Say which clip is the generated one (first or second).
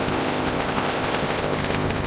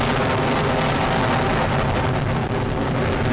first